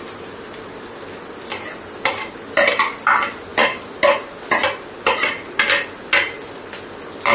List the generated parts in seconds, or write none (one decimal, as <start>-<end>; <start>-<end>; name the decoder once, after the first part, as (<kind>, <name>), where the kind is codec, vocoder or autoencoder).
none